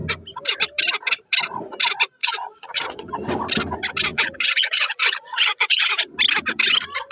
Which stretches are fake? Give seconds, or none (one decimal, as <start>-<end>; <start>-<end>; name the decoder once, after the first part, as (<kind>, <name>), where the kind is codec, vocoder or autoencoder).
2.2-3.1 (vocoder, Vocos); 4.1-6.0